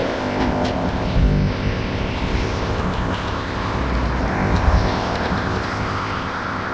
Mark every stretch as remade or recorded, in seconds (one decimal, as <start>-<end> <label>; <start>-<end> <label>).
0.0-3.8 remade; 3.8-4.3 recorded; 4.3-6.7 remade